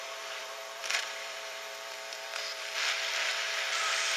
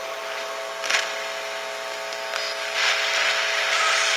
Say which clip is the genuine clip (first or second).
second